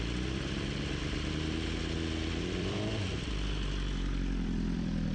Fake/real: fake